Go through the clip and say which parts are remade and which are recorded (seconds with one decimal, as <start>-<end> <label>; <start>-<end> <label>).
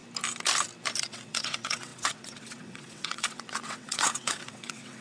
0.0-1.0 recorded; 1.0-5.0 remade